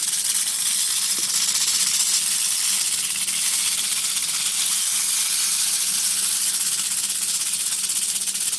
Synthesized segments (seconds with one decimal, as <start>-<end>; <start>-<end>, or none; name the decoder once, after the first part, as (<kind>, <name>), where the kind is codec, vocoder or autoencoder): none